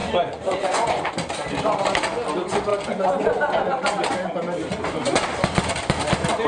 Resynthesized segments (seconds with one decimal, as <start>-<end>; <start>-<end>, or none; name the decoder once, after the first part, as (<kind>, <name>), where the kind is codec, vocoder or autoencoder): 0.0-1.1 (vocoder, Vocos)